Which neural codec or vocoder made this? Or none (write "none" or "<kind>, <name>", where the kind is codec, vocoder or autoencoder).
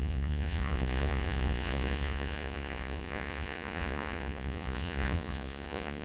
vocoder, Vocos